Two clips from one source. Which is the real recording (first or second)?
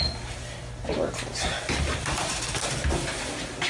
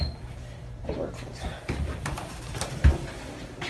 first